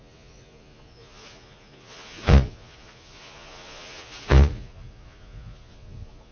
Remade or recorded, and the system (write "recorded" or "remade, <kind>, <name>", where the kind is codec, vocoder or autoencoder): remade, vocoder, Vocos